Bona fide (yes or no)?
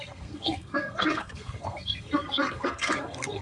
no